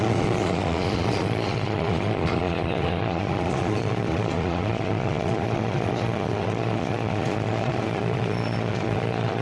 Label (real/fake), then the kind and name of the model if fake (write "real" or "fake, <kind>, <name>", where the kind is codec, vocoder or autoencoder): fake, vocoder, Vocos